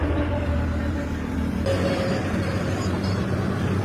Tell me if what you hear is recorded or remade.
recorded